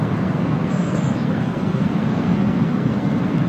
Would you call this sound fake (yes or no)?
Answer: yes